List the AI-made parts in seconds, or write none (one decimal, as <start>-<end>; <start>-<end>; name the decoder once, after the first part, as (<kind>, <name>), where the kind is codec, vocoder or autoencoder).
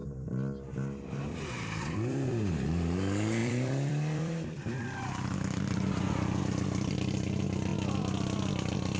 1.4-9.0 (vocoder, BigVGAN v2)